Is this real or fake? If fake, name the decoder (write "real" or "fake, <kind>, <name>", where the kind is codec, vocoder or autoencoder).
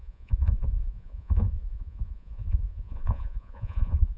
fake, vocoder, Vocos